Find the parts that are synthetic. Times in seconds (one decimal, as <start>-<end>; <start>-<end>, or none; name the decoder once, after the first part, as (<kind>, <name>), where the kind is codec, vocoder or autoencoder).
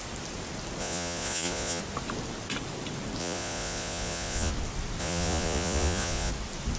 0.8-1.8 (vocoder, Vocos); 3.2-4.5; 5.0-6.3